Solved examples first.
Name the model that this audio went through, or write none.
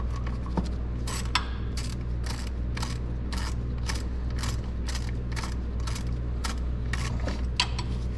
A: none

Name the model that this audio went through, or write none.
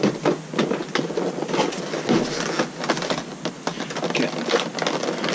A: none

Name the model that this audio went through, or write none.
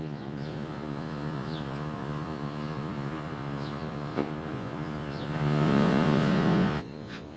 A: vocoder, Vocos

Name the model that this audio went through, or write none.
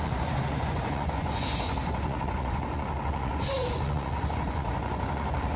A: vocoder, Vocos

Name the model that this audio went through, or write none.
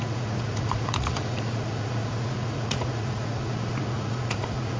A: vocoder, Vocos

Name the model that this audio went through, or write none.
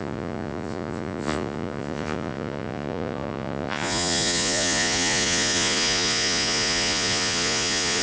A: vocoder, Vocos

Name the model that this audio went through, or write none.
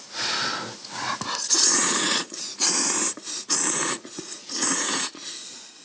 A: vocoder, Vocos